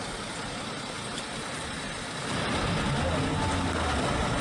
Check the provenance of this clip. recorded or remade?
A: recorded